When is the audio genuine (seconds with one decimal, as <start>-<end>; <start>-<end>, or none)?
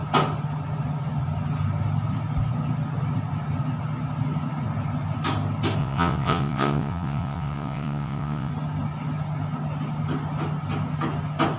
0.0-5.8; 8.5-11.6